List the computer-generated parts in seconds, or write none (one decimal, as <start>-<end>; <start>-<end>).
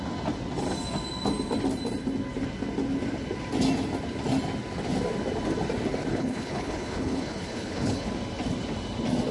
6.1-8.1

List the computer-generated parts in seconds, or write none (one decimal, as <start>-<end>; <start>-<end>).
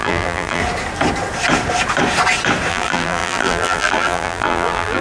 0.0-0.6; 2.7-5.0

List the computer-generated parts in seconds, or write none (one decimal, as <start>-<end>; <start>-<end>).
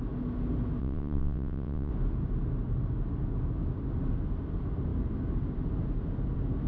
0.8-1.9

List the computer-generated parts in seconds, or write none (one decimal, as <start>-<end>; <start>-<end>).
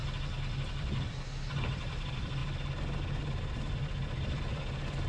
0.7-2.4; 3.2-5.1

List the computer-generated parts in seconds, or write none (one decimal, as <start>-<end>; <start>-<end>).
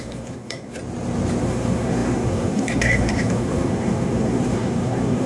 0.0-0.8; 1.4-5.3